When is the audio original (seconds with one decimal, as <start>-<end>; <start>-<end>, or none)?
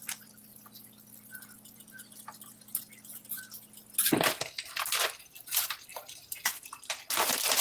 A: 0.0-7.6